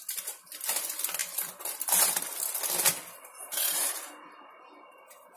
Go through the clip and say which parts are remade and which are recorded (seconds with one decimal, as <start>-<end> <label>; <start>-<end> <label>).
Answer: 0.0-5.4 recorded

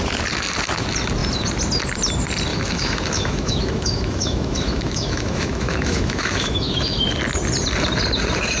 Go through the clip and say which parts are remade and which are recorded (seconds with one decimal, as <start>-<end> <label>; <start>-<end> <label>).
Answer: 0.0-2.5 recorded; 2.5-7.0 remade; 7.0-8.6 recorded

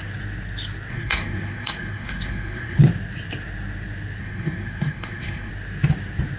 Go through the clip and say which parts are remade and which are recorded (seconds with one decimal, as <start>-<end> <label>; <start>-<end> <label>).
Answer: 0.0-0.9 recorded; 0.9-2.8 remade; 2.8-4.2 recorded; 4.2-5.5 remade; 5.5-6.4 recorded

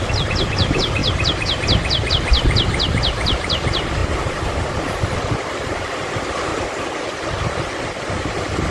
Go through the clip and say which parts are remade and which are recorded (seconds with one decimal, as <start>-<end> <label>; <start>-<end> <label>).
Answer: 0.0-1.0 remade; 1.0-2.1 recorded; 2.1-6.5 remade; 6.5-7.0 recorded; 7.0-8.7 remade

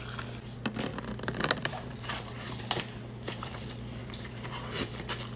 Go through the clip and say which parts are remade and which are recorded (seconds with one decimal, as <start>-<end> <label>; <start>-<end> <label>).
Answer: 0.0-0.9 recorded; 0.9-3.6 remade; 3.6-4.0 recorded; 4.0-4.9 remade; 4.9-5.4 recorded

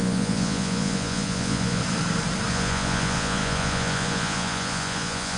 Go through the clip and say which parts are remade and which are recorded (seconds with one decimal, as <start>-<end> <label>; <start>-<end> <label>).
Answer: 0.0-1.8 remade; 1.8-2.5 recorded; 2.5-5.4 remade

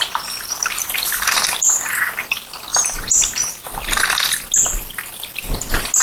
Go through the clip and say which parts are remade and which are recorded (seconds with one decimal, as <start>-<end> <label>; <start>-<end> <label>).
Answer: 0.0-0.6 recorded; 0.6-1.9 remade; 1.9-2.7 recorded; 2.7-4.0 remade; 4.0-6.0 recorded